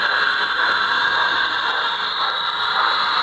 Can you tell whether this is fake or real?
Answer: real